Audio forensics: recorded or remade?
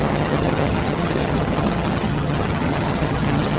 remade